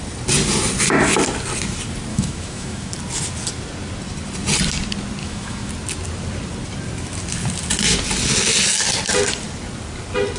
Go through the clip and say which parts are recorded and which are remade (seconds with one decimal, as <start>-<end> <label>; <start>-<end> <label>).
0.0-2.1 recorded; 2.1-2.9 remade; 2.9-5.2 recorded; 5.2-5.7 remade; 5.7-10.4 recorded